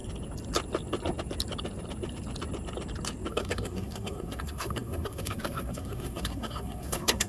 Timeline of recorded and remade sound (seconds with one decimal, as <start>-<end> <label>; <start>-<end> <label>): 0.0-3.3 recorded; 3.3-7.3 remade